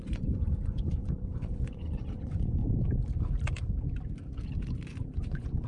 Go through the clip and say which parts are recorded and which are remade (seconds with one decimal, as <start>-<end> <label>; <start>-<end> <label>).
0.0-2.6 remade; 2.6-5.2 recorded; 5.2-5.7 remade